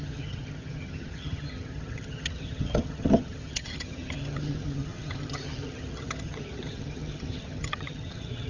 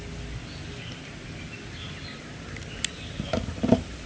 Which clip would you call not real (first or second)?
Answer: first